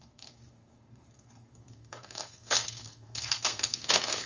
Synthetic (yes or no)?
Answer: yes